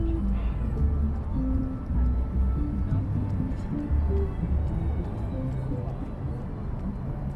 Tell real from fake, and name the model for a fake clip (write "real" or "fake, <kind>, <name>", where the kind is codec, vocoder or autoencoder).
real